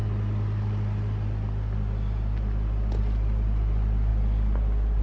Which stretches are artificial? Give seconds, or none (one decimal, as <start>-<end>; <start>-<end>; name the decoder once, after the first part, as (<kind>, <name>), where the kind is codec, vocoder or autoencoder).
none